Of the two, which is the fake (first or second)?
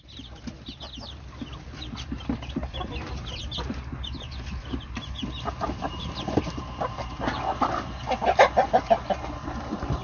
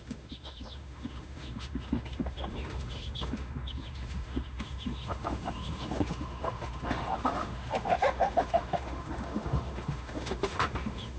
second